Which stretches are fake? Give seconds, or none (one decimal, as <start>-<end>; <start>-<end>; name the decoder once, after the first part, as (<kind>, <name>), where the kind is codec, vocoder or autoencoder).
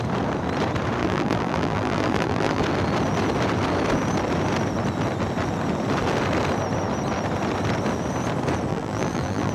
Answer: 1.0-2.6 (vocoder, BigVGAN v2); 8.7-9.5